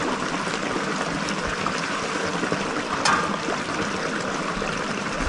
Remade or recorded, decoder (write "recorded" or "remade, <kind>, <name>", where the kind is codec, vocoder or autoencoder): recorded